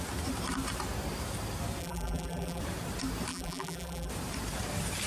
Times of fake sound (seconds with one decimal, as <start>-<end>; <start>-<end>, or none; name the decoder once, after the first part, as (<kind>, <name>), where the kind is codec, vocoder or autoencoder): 1.8-2.6 (vocoder, BigVGAN v2); 3.3-4.1